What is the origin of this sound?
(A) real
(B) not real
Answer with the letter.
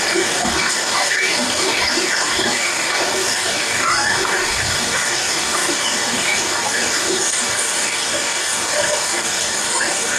B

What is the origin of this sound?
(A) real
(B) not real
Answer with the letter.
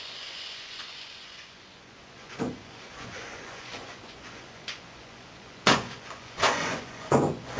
B